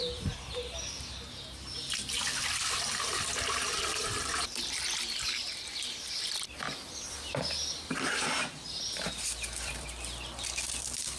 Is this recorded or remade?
remade